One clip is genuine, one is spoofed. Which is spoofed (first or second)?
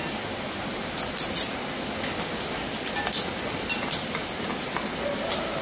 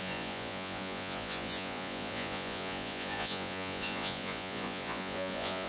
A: second